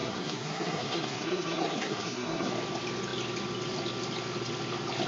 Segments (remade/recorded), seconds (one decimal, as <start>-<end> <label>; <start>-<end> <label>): 0.0-2.5 remade; 2.5-5.1 recorded

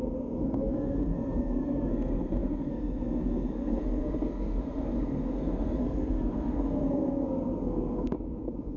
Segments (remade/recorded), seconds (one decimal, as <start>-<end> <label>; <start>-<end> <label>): 0.0-8.8 remade

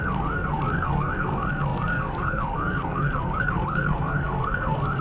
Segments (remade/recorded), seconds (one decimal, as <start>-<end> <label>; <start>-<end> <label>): 0.0-5.0 remade

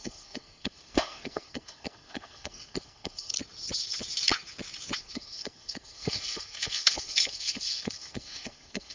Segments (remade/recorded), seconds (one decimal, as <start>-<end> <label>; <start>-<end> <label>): 0.0-3.3 remade; 3.3-5.0 recorded; 5.0-8.9 remade

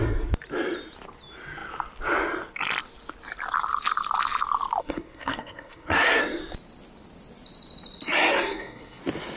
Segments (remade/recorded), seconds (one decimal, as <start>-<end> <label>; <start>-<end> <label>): 0.0-4.8 recorded; 4.8-6.2 remade; 6.2-8.3 recorded; 8.3-9.0 remade; 9.0-9.4 recorded